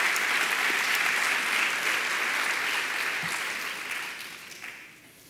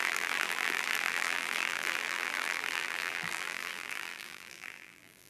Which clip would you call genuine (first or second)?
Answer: first